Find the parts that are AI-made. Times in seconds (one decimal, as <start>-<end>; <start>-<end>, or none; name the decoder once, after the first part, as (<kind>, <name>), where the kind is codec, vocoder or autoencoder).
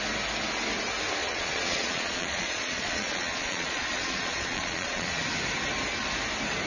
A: 1.2-5.2 (vocoder, Vocos)